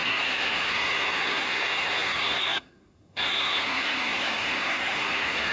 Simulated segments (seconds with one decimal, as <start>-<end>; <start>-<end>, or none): 0.0-5.5